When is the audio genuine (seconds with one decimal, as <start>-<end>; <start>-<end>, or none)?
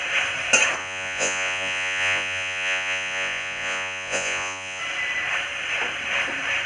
0.0-0.8; 4.8-6.7